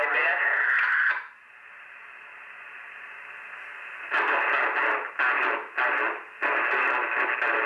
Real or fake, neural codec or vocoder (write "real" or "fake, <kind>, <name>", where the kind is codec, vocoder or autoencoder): real